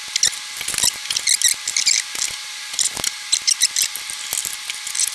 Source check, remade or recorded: recorded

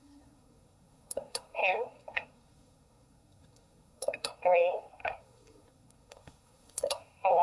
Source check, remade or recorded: remade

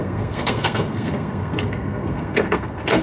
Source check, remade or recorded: remade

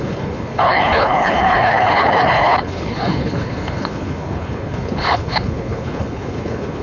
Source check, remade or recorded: remade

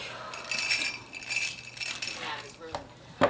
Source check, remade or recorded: recorded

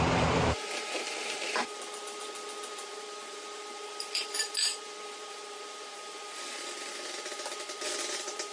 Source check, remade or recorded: remade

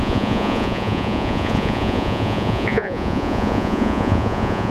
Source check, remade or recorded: remade